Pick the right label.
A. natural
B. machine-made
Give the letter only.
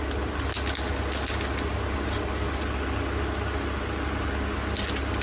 A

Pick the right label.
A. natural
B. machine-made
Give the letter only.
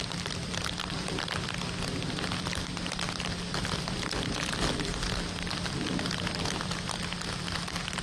B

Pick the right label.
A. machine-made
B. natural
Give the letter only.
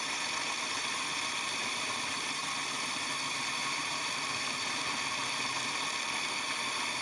A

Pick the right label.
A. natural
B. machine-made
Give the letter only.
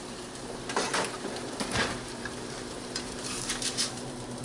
B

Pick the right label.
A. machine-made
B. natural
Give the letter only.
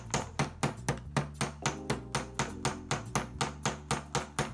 B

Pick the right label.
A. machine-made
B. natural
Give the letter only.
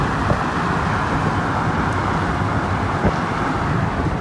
B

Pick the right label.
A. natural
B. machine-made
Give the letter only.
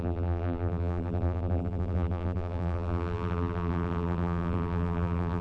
B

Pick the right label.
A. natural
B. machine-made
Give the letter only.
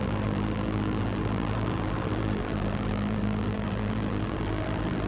B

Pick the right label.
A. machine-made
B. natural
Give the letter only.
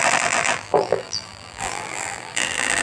A